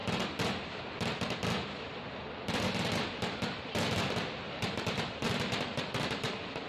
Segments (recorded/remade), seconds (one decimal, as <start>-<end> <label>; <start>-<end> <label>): 0.0-6.7 recorded